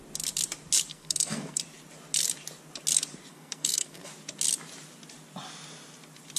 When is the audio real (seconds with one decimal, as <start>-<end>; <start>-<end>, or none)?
0.0-0.9; 1.6-3.3; 4.1-6.4